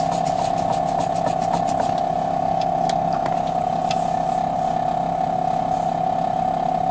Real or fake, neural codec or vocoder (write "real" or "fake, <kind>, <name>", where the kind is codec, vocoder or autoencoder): real